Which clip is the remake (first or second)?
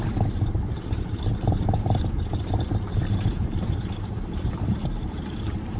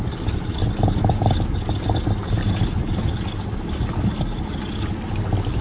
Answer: first